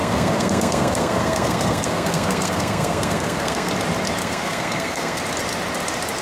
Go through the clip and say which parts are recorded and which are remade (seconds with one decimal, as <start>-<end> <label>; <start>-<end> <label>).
0.0-3.7 remade; 3.7-4.2 recorded; 4.2-5.2 remade; 5.2-6.2 recorded